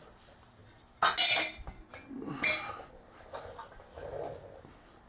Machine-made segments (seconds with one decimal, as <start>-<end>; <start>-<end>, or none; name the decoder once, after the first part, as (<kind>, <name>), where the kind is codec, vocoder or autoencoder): none